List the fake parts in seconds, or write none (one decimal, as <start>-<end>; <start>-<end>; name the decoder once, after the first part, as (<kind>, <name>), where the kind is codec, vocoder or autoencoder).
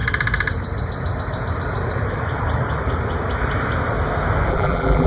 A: 4.5-5.1 (vocoder, BigVGAN v2)